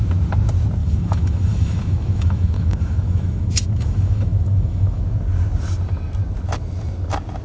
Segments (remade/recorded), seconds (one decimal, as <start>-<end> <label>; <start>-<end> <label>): 0.0-0.8 recorded; 0.8-5.0 remade; 5.0-7.4 recorded